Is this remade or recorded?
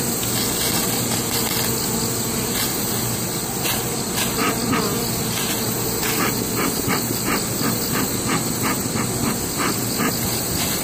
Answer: recorded